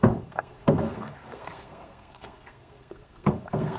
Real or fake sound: fake